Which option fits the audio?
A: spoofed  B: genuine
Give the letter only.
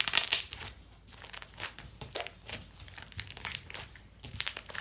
B